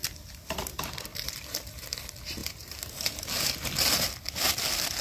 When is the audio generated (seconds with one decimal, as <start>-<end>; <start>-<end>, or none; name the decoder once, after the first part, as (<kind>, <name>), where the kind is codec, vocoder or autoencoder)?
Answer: 1.1-2.0 (vocoder, BigVGAN v2); 2.4-3.2